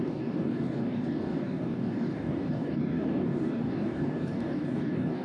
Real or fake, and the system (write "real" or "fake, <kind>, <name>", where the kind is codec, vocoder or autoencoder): fake, codec, DAC